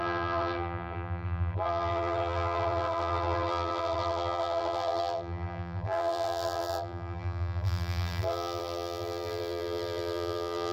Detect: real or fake fake